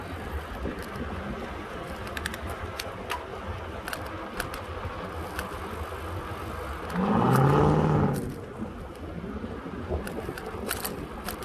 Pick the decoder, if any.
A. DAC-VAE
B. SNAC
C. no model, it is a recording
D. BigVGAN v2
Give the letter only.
C